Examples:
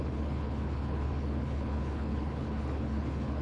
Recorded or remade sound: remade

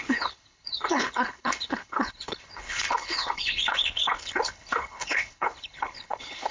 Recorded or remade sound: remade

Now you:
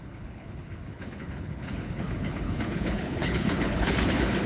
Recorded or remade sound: remade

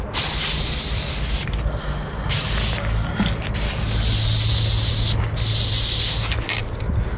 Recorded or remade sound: recorded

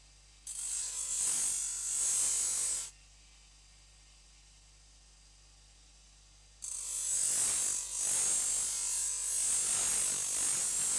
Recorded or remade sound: recorded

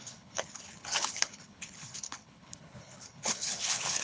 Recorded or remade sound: remade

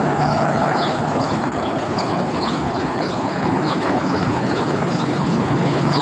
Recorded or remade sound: remade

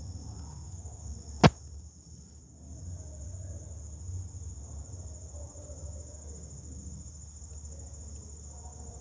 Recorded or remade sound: recorded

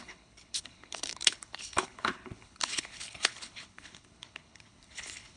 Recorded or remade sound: remade